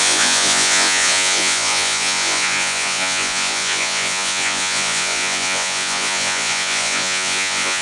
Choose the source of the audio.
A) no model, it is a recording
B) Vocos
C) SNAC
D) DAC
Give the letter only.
B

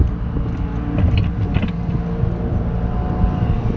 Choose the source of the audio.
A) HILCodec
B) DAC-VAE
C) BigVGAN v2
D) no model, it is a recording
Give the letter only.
D